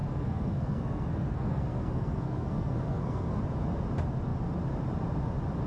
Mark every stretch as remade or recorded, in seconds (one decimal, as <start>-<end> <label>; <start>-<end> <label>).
0.0-3.4 remade; 3.4-5.7 recorded